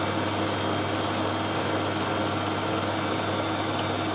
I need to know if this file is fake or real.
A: real